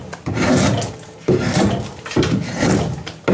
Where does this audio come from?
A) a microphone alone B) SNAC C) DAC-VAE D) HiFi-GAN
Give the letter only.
A